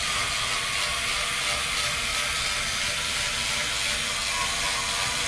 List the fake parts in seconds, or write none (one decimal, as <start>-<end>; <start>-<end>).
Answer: none